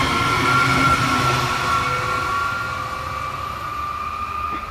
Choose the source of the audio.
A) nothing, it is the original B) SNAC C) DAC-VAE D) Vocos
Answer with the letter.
A